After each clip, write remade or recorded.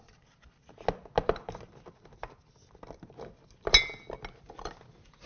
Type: recorded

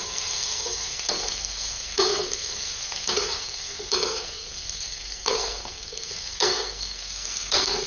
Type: remade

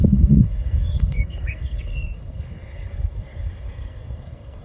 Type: remade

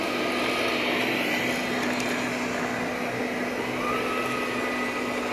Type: recorded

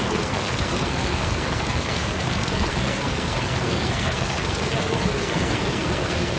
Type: remade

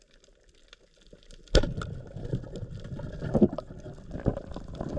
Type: recorded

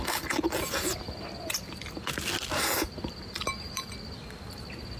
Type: recorded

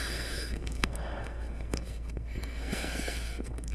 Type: remade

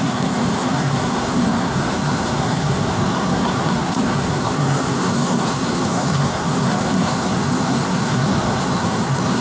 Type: remade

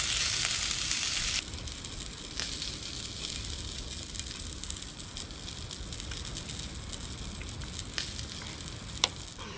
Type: recorded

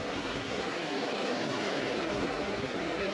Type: remade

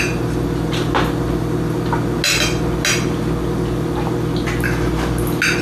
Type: recorded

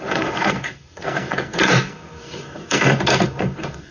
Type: remade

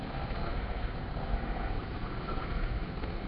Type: remade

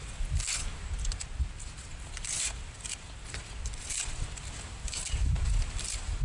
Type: recorded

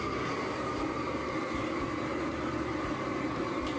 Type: recorded